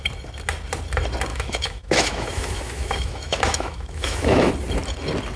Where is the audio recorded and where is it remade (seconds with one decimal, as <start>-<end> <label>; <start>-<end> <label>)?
0.0-1.3 recorded; 1.3-4.5 remade; 4.5-5.4 recorded